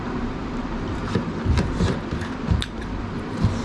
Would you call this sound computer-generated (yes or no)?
yes